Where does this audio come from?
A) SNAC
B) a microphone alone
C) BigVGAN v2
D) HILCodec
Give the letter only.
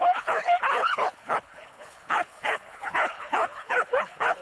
D